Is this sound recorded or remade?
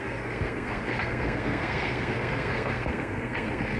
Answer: remade